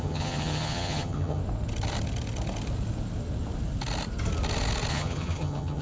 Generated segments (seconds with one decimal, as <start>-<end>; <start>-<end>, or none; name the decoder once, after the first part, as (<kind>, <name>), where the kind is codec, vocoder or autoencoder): 0.0-1.4 (vocoder, HiFi-GAN); 4.9-5.8